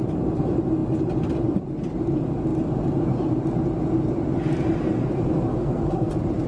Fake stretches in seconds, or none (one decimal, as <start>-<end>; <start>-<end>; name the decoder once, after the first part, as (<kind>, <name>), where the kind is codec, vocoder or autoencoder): 5.5-6.1 (codec, SNAC)